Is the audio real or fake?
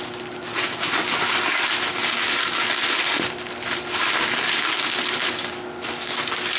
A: real